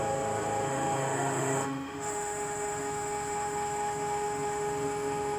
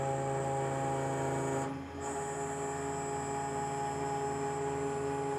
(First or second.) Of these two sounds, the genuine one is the second